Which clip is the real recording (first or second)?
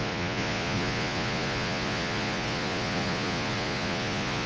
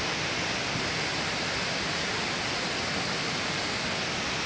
second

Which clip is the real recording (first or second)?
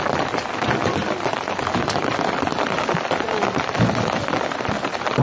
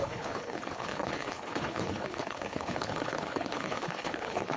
first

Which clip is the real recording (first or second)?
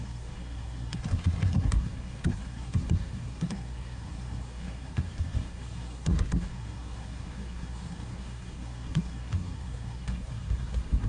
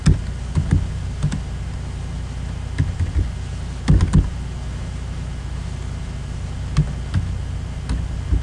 second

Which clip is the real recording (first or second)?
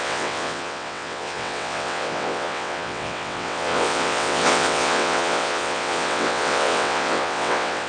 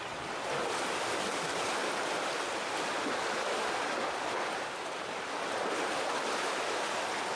second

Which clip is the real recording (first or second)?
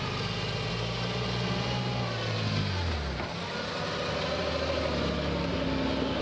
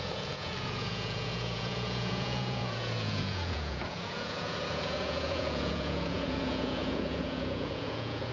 first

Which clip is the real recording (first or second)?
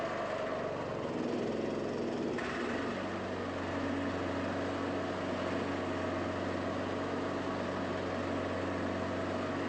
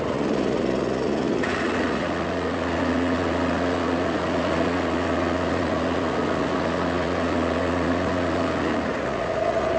first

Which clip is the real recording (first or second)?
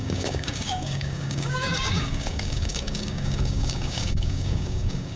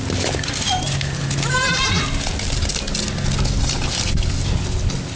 second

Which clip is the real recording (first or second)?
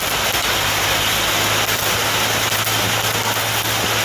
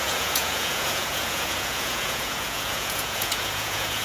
first